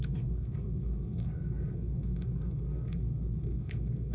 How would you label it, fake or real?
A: fake